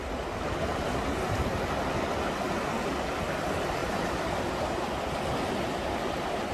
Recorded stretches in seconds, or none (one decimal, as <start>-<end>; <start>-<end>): 0.0-6.5